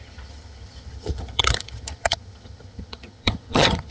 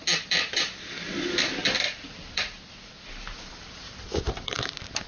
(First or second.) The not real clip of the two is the first